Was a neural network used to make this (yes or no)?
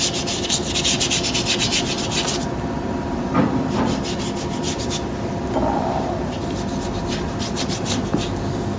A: no